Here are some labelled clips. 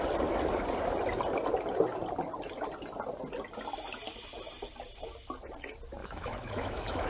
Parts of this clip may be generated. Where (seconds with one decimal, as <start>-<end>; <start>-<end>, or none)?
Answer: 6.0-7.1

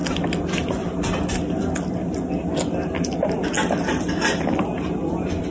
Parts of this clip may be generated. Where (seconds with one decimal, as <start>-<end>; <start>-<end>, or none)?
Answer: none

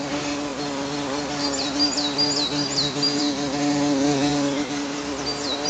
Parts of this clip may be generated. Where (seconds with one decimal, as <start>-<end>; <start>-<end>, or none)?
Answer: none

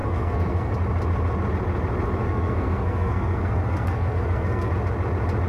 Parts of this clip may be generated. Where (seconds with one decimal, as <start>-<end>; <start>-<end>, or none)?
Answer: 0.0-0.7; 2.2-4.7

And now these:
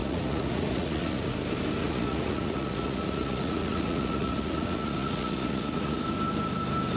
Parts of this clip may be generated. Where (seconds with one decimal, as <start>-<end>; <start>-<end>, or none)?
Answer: 0.0-1.3; 1.8-6.0

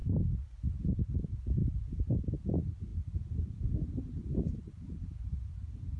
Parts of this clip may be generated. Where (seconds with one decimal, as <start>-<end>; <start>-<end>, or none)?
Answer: 2.9-3.7